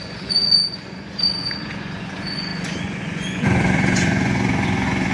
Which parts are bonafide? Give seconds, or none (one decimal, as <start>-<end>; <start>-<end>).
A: none